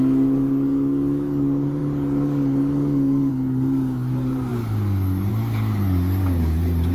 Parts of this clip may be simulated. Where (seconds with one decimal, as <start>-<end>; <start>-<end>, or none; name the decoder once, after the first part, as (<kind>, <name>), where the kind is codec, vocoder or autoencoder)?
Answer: 0.0-6.9 (codec, DAC)